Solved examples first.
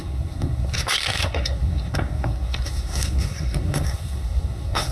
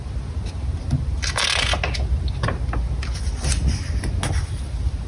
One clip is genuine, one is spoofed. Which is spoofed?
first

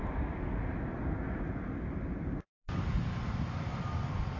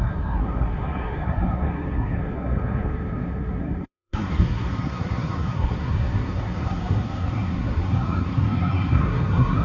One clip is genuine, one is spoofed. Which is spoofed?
second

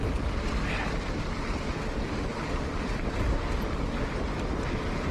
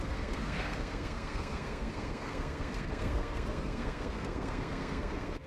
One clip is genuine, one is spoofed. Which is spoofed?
second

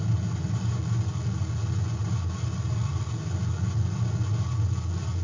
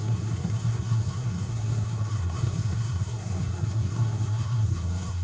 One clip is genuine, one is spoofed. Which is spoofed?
second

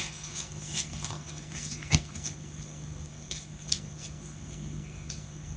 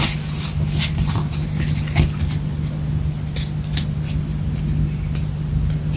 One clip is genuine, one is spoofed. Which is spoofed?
first